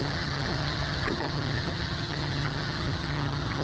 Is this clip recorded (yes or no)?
no